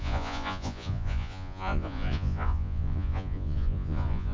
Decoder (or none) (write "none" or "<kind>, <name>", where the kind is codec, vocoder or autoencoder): vocoder, Vocos